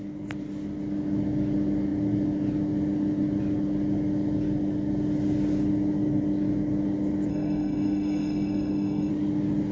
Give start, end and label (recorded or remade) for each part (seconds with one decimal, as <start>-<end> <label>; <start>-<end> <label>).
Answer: 0.0-7.3 recorded; 7.3-9.1 remade; 9.1-9.7 recorded